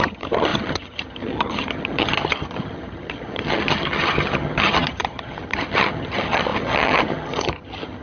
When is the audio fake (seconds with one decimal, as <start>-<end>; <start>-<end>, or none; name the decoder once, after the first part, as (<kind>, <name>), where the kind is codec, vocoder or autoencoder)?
0.0-8.0 (vocoder, HiFi-GAN)

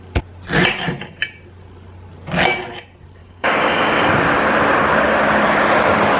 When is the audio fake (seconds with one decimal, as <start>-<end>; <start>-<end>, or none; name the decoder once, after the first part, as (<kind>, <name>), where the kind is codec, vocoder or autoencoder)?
3.2-4.1 (codec, DAC)

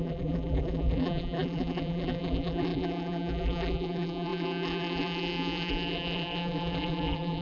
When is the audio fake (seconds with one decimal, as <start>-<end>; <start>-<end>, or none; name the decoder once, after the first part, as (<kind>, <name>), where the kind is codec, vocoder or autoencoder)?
0.0-7.4 (vocoder, BigVGAN v2)

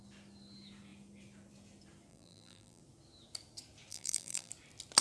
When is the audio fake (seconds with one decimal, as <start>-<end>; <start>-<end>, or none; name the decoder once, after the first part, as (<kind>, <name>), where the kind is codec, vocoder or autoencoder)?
2.1-2.8 (vocoder, BigVGAN v2); 3.9-4.5

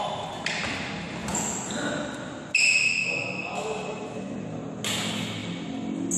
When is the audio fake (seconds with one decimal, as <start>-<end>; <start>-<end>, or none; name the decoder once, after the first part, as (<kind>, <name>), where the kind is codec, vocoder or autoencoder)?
none

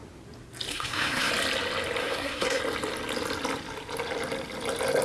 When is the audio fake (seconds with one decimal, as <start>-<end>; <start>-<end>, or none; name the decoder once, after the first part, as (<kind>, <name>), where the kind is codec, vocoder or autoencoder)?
0.7-1.3 (codec, SNAC); 2.0-2.6

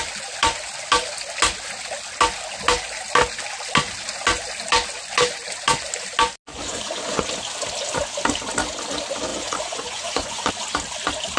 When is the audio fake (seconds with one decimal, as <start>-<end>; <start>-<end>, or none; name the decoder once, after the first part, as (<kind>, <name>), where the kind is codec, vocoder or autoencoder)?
6.5-7.2 (vocoder, Vocos); 9.3-10.5